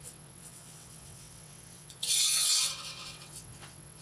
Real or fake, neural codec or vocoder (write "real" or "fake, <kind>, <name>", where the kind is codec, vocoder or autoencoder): fake, vocoder, WaveNeXt